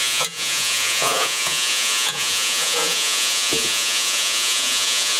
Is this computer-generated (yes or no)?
yes